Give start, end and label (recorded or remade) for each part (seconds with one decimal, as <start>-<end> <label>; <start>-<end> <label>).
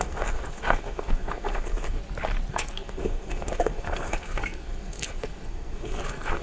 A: 0.0-2.0 remade; 2.0-2.5 recorded; 2.5-6.4 remade